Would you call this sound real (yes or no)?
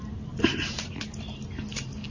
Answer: yes